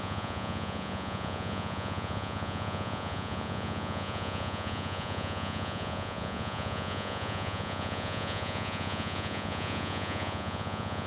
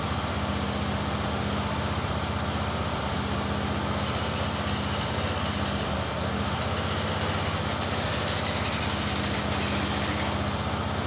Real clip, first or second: second